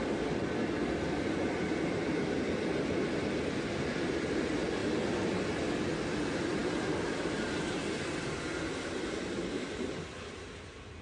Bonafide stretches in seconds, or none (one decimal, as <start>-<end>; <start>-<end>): 0.0-6.6; 7.7-11.0